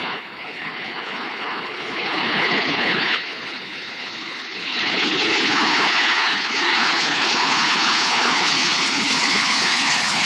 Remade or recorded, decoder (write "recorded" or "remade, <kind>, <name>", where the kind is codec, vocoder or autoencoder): remade, codec, HILCodec